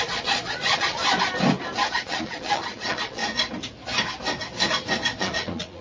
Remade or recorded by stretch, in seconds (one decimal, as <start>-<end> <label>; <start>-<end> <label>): 0.0-1.0 remade; 1.0-1.9 recorded; 1.9-3.2 remade; 3.2-5.2 recorded; 5.2-5.8 remade

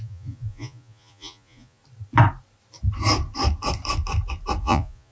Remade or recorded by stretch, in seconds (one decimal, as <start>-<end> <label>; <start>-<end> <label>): 0.0-1.8 remade; 1.8-4.6 recorded; 4.6-5.1 remade

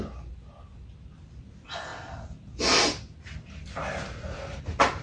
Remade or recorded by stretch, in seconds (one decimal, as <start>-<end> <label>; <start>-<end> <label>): 0.0-5.0 recorded

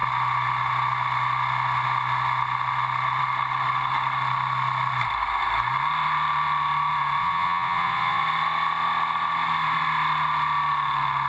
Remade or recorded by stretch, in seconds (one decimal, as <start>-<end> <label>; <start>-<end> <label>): 0.0-7.2 recorded; 7.2-8.2 remade; 8.2-11.3 recorded